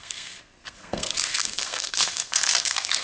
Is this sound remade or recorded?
remade